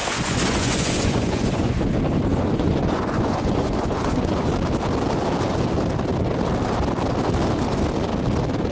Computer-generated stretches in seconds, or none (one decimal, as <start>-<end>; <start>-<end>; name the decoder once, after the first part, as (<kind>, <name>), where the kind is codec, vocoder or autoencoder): 0.0-1.9 (vocoder, Vocos); 2.3-4.5